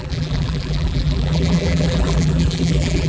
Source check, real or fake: fake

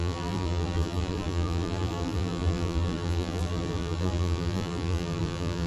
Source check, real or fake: fake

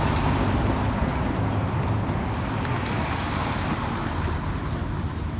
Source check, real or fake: real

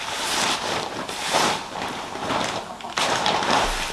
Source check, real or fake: fake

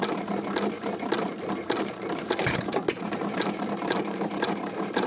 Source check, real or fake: fake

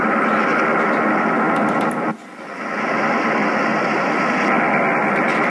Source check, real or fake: real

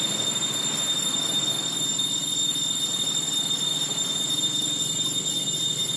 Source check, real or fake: real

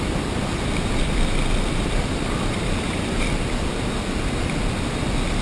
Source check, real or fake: real